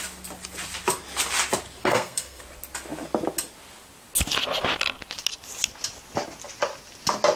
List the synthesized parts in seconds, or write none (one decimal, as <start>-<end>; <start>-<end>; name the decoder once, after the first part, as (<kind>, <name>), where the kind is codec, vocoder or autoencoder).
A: 1.8-2.4 (codec, SNAC)